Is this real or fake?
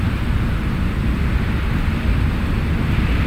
real